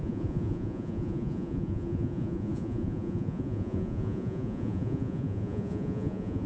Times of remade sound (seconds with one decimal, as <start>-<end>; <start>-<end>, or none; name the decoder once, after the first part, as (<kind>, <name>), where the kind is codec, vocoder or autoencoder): 0.0-6.5 (vocoder, Vocos)